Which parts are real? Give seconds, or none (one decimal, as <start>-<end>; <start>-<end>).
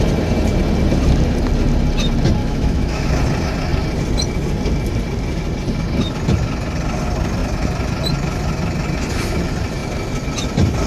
0.0-2.4; 3.1-10.9